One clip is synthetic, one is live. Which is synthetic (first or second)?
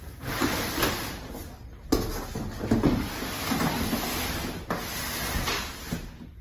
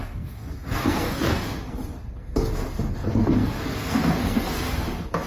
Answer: second